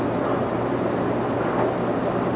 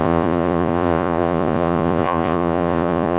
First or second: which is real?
first